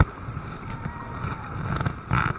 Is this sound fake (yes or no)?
no